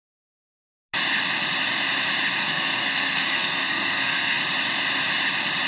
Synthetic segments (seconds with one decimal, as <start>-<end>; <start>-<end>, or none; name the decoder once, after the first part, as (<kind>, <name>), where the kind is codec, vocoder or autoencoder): 2.4-4.4 (codec, SNAC)